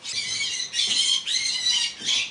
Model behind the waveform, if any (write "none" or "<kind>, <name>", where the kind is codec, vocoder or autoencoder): none